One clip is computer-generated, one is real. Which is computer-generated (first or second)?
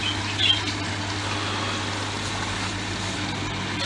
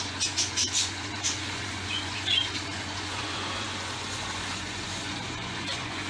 second